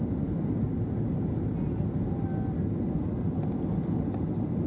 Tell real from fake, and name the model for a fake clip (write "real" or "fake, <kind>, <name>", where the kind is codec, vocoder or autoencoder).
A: real